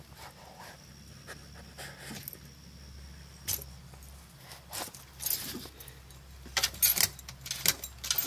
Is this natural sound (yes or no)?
yes